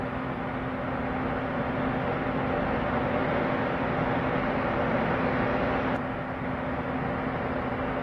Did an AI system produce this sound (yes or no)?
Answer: no